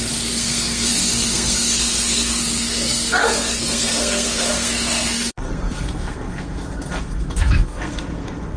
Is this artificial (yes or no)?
yes